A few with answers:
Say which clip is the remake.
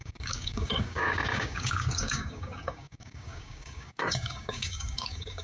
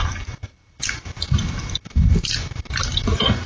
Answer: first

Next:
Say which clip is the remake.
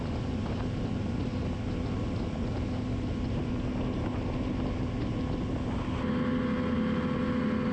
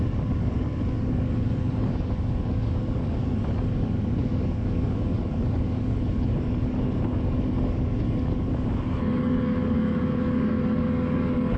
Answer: second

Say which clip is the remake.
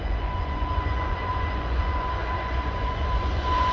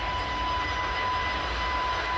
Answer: first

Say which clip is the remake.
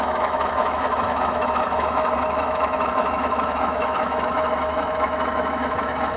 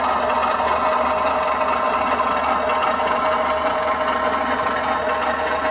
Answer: first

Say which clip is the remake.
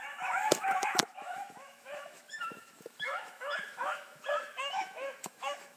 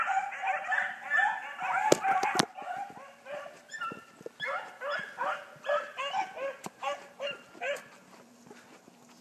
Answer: first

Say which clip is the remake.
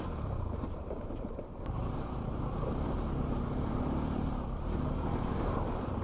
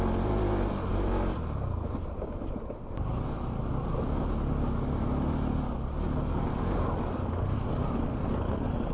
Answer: first